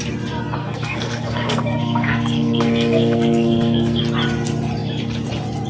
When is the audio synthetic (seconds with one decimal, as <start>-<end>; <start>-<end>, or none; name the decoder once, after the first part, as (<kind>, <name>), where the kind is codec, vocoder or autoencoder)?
0.6-4.0 (codec, SNAC)